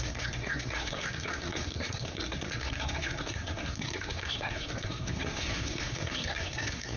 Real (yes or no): no